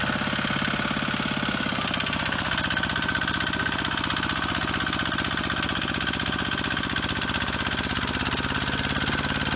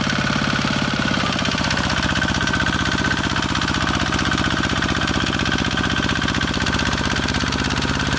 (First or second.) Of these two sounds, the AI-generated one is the second